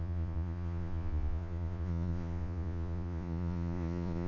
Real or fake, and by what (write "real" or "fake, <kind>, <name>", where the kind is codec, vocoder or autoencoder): fake, vocoder, Vocos